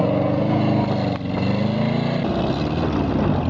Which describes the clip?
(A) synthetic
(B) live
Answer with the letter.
B